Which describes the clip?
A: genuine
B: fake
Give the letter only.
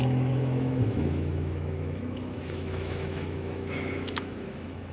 B